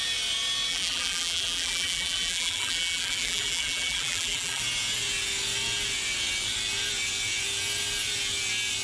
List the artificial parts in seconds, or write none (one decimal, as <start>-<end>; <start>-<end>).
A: 0.7-4.6